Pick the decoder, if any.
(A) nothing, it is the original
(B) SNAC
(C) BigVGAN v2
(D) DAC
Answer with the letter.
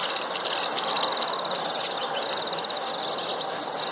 A